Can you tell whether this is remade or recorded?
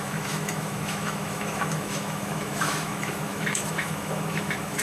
remade